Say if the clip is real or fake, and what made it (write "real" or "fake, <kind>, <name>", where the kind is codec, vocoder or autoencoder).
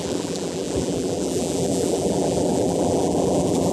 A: fake, vocoder, BigVGAN v2